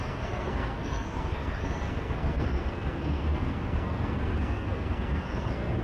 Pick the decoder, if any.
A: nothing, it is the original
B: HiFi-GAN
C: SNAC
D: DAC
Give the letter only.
C